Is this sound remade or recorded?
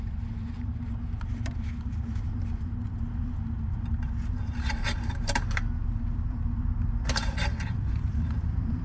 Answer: remade